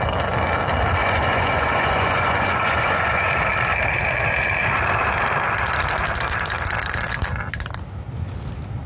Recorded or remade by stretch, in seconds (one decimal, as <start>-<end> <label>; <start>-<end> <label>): 0.0-1.0 recorded; 1.0-3.3 remade; 3.3-8.9 recorded